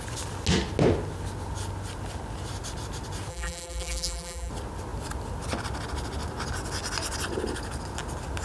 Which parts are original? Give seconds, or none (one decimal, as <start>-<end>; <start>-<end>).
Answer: 0.0-3.3; 4.5-8.4